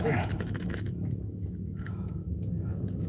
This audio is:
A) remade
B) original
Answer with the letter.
A